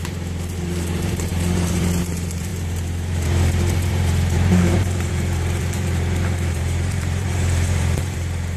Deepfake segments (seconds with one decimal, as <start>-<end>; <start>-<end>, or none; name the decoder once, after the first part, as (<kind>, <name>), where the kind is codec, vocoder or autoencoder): 0.0-8.6 (vocoder, BigVGAN v2)